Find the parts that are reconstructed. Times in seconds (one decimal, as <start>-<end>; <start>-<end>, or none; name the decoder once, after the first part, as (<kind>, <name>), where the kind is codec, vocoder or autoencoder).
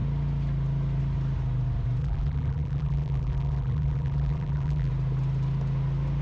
2.0-4.9 (vocoder, BigVGAN v2)